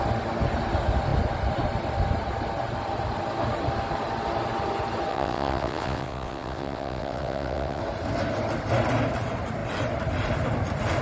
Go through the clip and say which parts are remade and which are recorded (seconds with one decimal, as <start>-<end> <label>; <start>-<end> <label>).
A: 0.0-5.1 recorded; 5.1-7.8 remade; 7.8-11.0 recorded

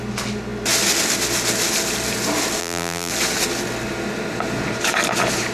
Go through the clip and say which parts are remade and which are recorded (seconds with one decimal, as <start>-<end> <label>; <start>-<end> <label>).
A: 0.0-2.6 recorded; 2.6-3.1 remade; 3.1-5.5 recorded

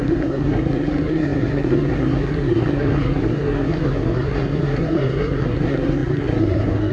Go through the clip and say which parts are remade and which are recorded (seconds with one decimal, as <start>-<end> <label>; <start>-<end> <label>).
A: 0.0-6.9 remade

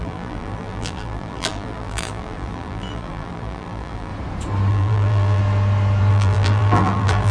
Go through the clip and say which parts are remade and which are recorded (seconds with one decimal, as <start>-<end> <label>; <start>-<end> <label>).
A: 0.0-4.1 remade; 4.1-4.7 recorded; 4.7-5.4 remade; 5.4-6.1 recorded; 6.1-7.3 remade

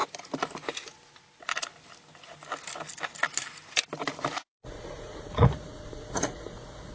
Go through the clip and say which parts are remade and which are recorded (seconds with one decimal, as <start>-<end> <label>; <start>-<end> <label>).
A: 0.0-4.5 recorded; 4.5-6.9 remade

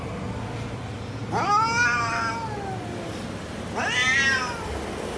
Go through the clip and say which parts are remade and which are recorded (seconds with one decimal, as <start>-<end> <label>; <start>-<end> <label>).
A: 0.0-5.2 recorded

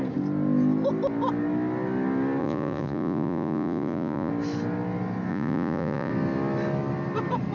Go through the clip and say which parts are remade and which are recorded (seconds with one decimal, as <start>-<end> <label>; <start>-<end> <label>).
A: 0.0-2.4 recorded; 2.4-4.3 remade; 4.3-5.3 recorded; 5.3-6.1 remade; 6.1-7.5 recorded